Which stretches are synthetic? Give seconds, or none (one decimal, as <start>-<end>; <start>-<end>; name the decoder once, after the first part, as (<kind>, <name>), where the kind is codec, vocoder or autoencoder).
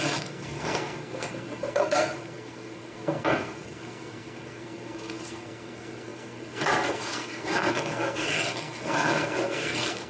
0.0-10.1 (codec, SNAC)